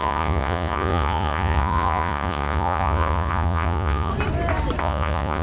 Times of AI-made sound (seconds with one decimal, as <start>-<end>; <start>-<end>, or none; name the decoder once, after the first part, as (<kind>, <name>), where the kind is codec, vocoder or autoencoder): 0.0-4.1 (vocoder, Vocos); 4.8-5.4